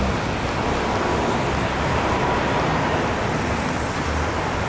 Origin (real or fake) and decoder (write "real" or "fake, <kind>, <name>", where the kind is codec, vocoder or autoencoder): real